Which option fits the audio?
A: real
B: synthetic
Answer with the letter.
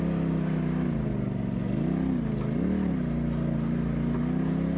A